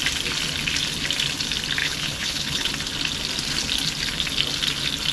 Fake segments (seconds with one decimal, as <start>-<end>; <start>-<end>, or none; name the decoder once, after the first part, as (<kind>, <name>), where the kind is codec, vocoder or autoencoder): 1.8-2.7 (codec, HILCodec)